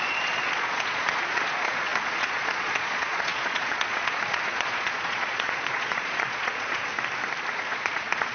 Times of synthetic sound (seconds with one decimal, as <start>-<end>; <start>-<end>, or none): 0.0-6.9; 7.5-8.3